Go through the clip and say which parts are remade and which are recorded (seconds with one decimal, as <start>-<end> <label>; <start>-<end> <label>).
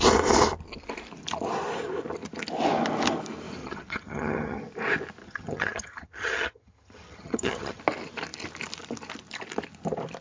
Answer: 0.0-3.6 recorded; 3.6-4.6 remade; 4.6-5.2 recorded; 5.2-7.8 remade; 7.8-10.2 recorded